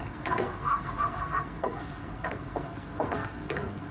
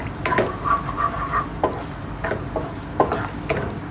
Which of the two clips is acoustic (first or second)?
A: second